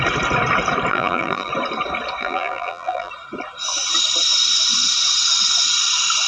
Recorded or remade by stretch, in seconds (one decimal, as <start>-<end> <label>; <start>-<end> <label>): 0.0-0.9 recorded; 0.9-1.5 remade; 1.5-2.2 recorded; 2.2-3.1 remade; 3.1-6.3 recorded

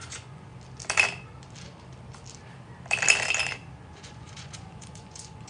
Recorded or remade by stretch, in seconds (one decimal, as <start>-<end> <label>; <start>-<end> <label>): 0.0-0.5 remade; 0.5-3.8 recorded; 3.8-5.5 remade

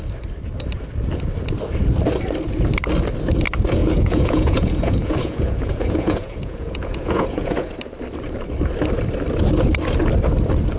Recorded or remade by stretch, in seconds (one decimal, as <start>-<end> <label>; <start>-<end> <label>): 0.0-3.8 recorded; 3.8-7.7 remade; 7.7-10.8 recorded

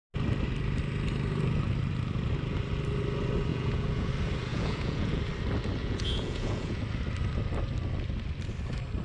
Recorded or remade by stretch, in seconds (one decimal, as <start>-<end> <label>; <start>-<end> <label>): 0.0-3.5 recorded; 3.5-4.1 remade; 4.1-4.5 recorded; 4.5-5.2 remade; 5.2-5.8 recorded; 5.8-6.8 remade; 6.8-9.0 recorded